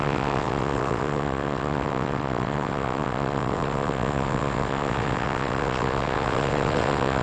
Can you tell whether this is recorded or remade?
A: remade